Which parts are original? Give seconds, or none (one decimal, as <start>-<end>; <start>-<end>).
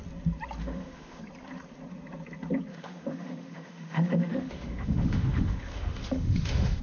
0.0-0.6; 1.2-2.7